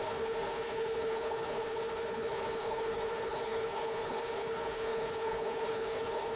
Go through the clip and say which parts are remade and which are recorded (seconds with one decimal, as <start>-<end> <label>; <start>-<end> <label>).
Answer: 0.0-6.4 remade